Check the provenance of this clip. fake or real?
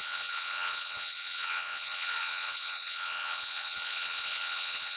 fake